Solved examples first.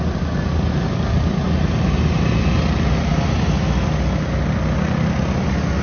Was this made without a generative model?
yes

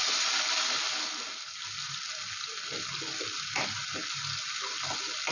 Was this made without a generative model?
yes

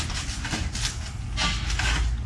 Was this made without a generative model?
yes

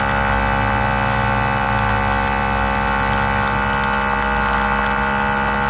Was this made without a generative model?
yes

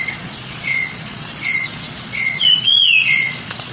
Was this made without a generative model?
no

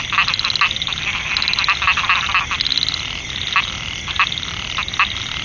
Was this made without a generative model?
yes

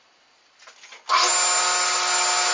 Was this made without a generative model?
yes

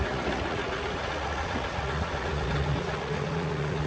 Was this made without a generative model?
no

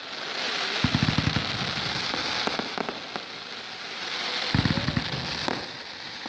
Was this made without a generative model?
yes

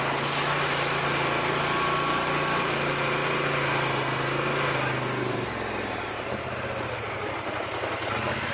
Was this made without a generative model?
yes